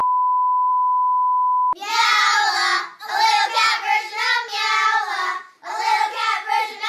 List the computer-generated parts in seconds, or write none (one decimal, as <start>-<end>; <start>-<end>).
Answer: none